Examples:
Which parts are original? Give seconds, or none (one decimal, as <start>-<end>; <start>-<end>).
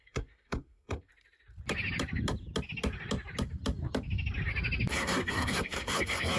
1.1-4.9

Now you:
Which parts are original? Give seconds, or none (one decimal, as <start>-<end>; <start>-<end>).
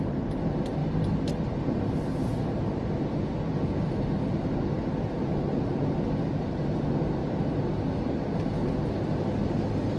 0.0-10.0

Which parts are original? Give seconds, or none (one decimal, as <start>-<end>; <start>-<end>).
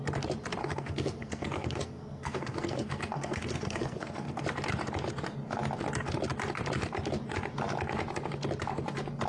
0.0-0.6; 4.4-9.3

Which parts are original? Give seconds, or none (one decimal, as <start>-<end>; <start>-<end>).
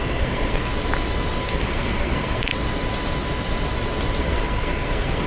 0.7-1.4; 2.5-4.2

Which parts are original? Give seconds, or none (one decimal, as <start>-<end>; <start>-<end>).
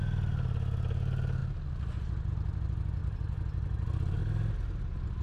0.0-5.2